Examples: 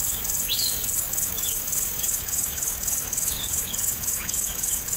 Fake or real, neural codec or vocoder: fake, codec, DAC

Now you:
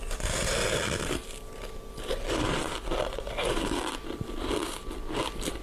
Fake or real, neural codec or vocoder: real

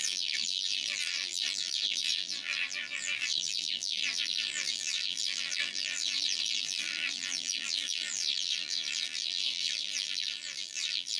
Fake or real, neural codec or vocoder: fake, vocoder, BigVGAN v2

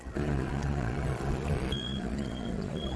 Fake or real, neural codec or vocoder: fake, vocoder, Vocos